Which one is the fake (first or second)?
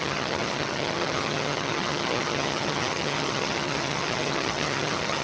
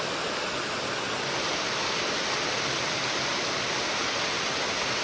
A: first